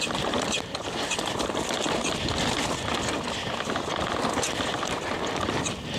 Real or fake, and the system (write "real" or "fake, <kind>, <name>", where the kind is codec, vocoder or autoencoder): real